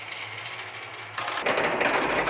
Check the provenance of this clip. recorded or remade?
recorded